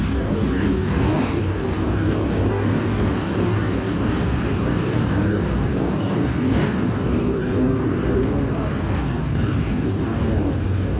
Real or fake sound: fake